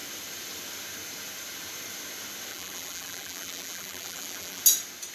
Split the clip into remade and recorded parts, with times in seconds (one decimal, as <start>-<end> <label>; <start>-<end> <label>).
0.0-2.5 recorded; 2.5-4.6 remade; 4.6-5.1 recorded